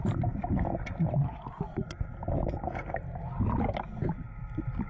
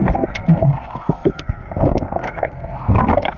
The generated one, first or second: second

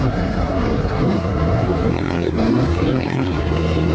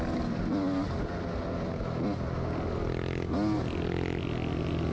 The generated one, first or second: first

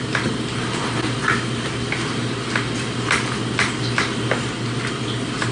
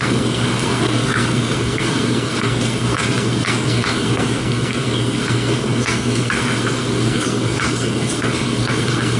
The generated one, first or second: second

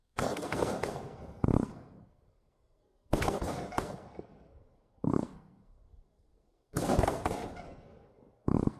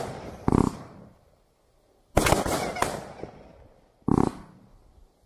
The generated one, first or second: first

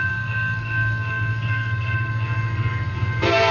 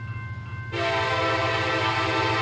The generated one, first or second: first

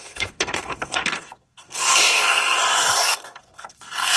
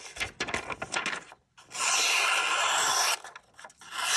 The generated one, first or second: first